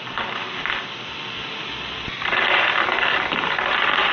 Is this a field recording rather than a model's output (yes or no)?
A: yes